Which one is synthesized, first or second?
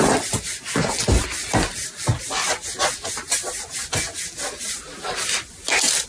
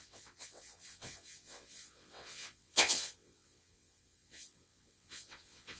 second